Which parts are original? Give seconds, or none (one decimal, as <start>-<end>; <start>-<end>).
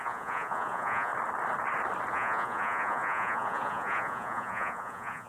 1.1-2.1